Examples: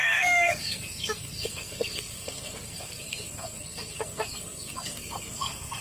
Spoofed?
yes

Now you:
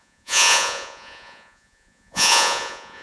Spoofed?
yes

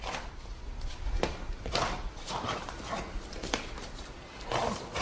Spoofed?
no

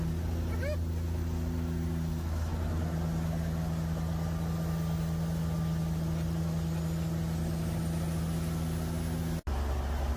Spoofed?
no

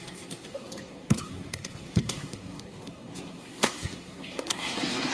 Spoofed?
yes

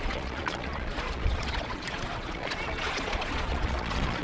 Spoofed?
yes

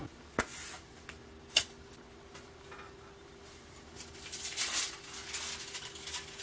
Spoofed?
no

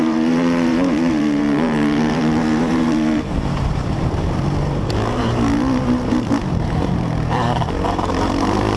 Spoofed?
yes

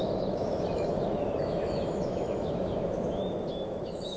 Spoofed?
yes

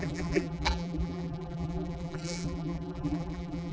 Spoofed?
yes